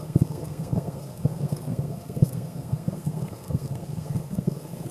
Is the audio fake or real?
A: fake